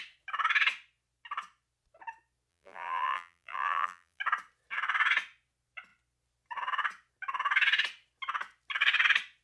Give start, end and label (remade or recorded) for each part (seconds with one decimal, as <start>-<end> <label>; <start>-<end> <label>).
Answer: 0.0-2.5 recorded; 2.5-4.2 remade; 4.2-9.4 recorded